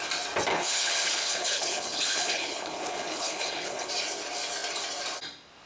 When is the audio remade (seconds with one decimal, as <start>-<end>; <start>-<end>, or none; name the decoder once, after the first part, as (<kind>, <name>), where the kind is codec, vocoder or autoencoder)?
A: 0.5-3.9 (codec, HILCodec)